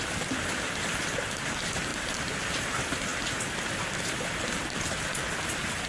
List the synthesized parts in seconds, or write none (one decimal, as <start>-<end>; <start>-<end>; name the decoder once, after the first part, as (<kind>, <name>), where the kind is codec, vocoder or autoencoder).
none